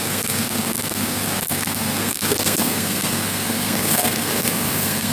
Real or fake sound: fake